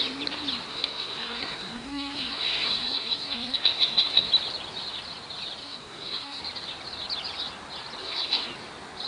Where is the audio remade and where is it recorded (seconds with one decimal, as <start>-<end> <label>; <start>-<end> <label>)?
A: 0.0-0.7 recorded; 0.7-4.3 remade; 4.3-5.6 recorded; 5.6-6.4 remade; 6.4-8.0 recorded; 8.0-8.5 remade; 8.5-9.1 recorded